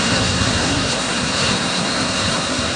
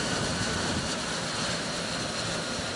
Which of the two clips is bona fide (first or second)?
second